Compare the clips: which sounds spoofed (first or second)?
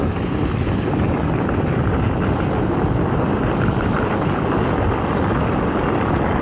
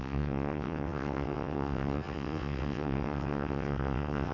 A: second